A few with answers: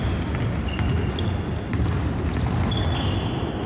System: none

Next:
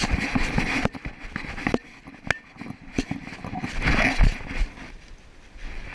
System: none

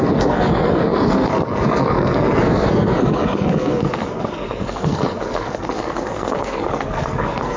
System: codec, SNAC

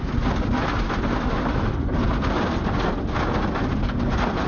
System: none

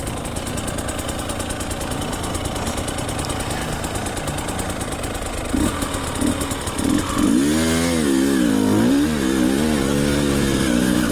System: none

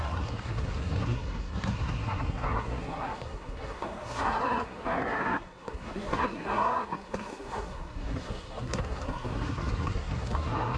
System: codec, SNAC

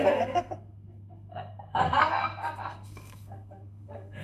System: codec, SNAC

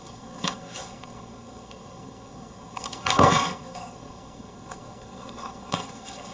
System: codec, SNAC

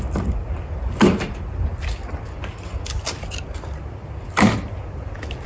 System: none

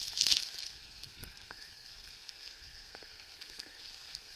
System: codec, SNAC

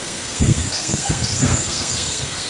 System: codec, SNAC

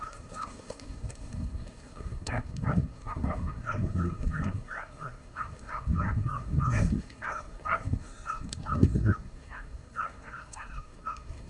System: codec, SNAC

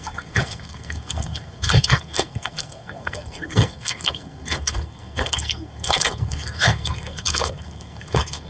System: codec, SNAC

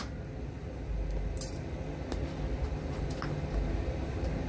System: none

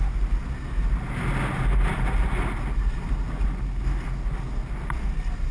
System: none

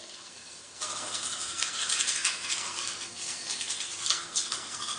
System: codec, SNAC